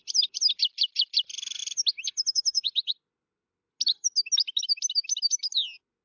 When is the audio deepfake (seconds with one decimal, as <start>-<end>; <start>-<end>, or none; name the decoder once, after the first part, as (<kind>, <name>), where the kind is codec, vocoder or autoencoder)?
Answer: none

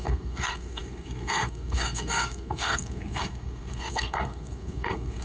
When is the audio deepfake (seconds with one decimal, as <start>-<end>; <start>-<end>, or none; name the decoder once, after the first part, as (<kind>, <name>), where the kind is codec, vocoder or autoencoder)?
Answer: 0.0-5.2 (codec, SNAC)

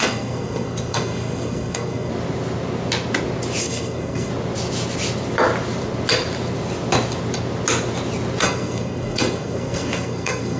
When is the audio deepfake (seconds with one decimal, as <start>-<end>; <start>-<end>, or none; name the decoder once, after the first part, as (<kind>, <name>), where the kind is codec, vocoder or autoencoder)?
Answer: 0.0-2.1 (codec, SNAC); 3.6-4.3; 8.4-10.6